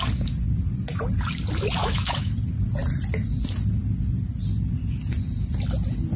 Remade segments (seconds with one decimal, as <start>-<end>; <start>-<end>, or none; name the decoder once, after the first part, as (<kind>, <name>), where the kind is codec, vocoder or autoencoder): 1.8-2.3 (autoencoder, DAC-VAE)